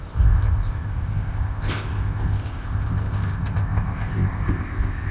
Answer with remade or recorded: remade